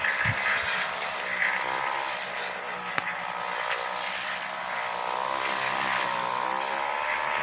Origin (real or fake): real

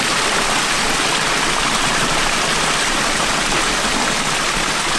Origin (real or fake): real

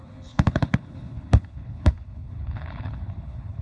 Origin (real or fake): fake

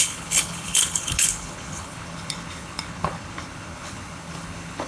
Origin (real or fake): fake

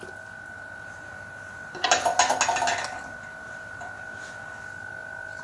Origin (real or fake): real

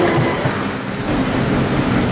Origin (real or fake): real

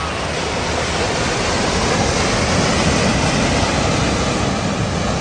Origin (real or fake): real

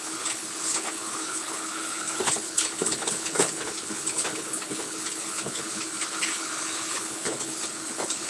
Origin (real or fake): fake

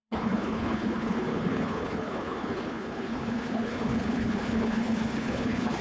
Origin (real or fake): fake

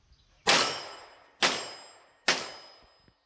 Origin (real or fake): real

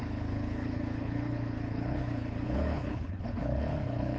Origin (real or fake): fake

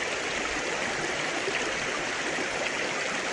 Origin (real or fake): real